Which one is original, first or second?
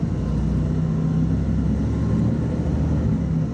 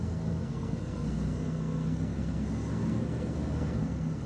first